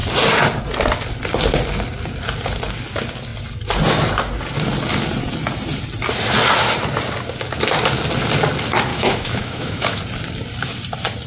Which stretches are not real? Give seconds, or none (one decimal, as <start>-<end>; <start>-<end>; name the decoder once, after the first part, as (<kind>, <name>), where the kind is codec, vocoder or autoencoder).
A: 8.9-10.0 (autoencoder, DAC-VAE)